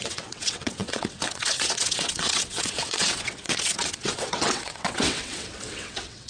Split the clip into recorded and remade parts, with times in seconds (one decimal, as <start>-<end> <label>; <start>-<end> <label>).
0.0-6.3 remade